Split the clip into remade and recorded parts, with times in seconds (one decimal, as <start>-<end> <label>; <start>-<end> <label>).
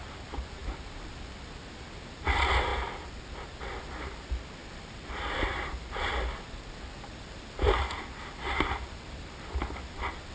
0.0-10.3 recorded